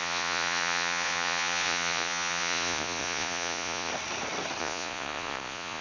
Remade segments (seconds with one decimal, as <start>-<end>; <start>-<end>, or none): 0.0-3.9; 4.6-5.8